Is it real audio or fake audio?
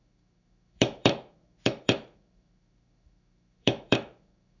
fake